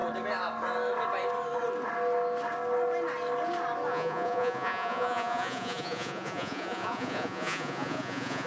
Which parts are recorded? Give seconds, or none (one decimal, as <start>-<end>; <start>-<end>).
0.0-3.9